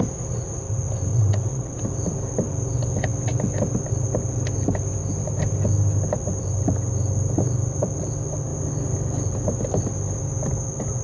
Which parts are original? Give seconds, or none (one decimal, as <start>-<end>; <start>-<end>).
0.0-1.1; 1.8-11.0